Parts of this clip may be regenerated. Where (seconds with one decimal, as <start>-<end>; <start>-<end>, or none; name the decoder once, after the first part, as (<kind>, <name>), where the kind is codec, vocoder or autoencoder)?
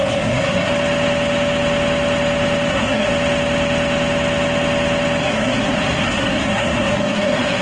0.0-0.7 (codec, SNAC); 2.7-3.1; 5.2-7.6